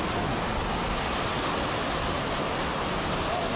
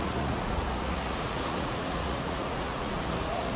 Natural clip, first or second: first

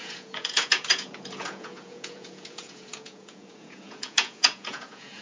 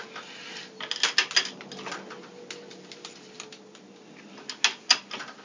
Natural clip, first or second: second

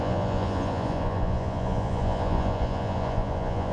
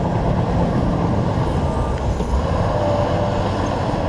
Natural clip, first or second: second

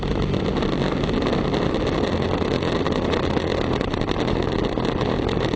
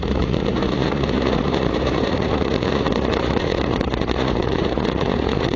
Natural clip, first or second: first